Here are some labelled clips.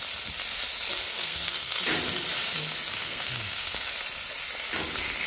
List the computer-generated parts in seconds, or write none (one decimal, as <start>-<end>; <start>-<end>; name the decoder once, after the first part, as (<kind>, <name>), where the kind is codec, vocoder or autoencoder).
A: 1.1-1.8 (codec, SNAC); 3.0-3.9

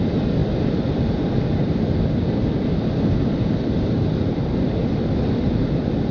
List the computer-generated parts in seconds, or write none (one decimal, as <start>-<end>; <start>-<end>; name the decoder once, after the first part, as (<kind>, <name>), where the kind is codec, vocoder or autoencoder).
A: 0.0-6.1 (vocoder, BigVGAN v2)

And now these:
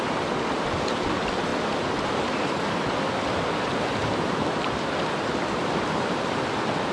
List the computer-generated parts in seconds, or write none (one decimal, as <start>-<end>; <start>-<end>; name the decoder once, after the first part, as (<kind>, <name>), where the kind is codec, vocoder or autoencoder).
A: none

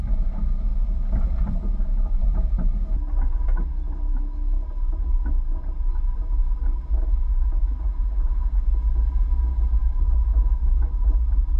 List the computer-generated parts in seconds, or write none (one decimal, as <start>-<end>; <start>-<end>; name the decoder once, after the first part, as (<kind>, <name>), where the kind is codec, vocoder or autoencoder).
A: 7.6-8.5 (autoencoder, DAC-VAE)

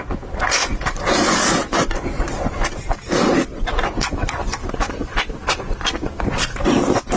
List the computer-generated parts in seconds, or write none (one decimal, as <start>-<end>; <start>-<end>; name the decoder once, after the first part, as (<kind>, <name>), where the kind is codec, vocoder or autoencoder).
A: none

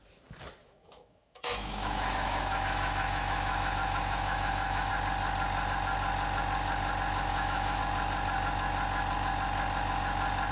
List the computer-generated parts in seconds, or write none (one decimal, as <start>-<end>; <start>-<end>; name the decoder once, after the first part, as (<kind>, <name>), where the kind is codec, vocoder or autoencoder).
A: 0.6-4.9 (autoencoder, DAC-VAE); 7.3-7.8